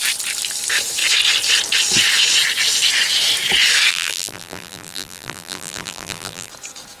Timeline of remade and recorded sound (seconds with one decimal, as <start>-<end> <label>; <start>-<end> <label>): 0.0-3.9 recorded; 3.9-6.5 remade; 6.5-7.0 recorded